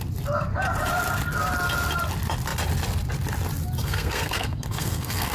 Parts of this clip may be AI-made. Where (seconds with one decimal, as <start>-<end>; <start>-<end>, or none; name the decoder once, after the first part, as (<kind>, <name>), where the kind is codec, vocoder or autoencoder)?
3.8-5.3 (codec, SNAC)